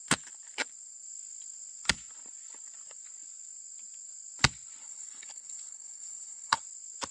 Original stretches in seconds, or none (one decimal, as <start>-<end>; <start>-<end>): 0.0-4.8; 6.6-7.1